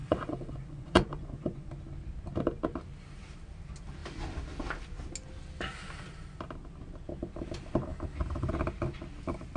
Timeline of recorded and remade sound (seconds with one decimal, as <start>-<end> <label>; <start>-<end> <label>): 0.0-1.7 remade; 1.7-9.6 recorded

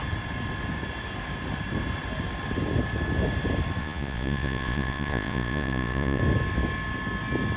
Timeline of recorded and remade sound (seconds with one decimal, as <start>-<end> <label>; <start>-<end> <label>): 0.0-3.8 recorded; 3.8-6.2 remade; 6.2-7.6 recorded

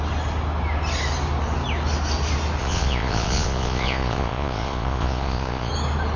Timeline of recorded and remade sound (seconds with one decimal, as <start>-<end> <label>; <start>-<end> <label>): 0.0-2.6 recorded; 2.6-5.7 remade; 5.7-6.2 recorded

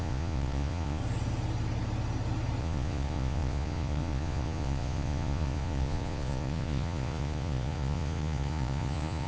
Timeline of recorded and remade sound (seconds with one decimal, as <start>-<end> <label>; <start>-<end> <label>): 0.0-1.0 remade; 1.0-2.6 recorded; 2.6-9.3 remade

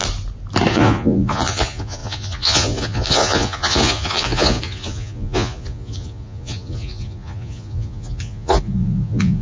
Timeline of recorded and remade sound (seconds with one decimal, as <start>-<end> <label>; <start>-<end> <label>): 0.0-0.7 recorded; 0.7-9.4 remade

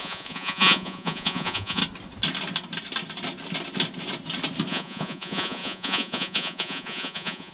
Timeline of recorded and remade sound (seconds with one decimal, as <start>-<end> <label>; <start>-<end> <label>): 0.0-1.8 remade; 1.8-4.7 recorded; 4.7-7.5 remade

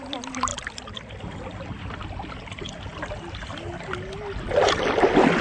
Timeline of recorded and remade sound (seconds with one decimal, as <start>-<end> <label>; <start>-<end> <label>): 0.0-5.4 recorded